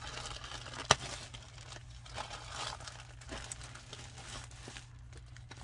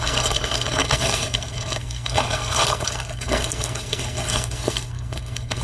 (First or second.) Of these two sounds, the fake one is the second